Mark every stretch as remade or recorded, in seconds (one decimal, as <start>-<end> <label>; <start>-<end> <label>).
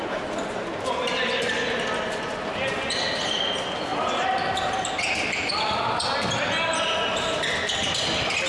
0.0-8.5 recorded